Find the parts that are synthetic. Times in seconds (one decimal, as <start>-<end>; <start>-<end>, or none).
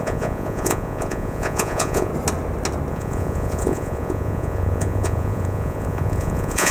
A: 0.0-2.1; 2.9-6.7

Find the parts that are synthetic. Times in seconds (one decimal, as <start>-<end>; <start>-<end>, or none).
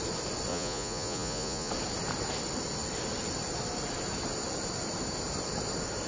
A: 0.5-1.7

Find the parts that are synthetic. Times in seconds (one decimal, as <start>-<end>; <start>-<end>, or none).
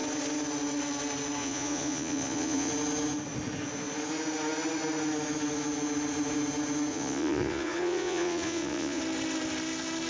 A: 1.4-2.7; 6.9-9.0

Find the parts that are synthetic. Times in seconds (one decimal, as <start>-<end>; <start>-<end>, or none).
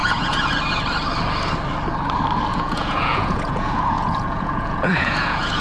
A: 0.0-0.5; 2.5-5.6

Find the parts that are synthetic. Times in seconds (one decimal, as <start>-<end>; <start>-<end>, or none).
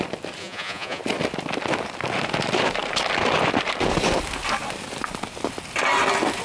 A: 0.4-1.0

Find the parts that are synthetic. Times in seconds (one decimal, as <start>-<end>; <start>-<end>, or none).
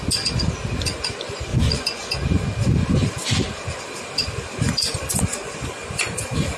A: 1.5-2.1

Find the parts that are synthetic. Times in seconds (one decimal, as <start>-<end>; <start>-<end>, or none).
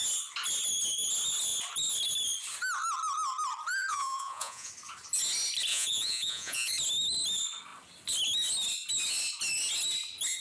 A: 3.9-4.7; 5.7-6.7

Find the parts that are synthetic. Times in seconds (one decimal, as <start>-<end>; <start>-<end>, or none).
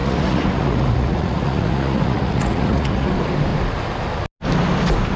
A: 0.0-3.1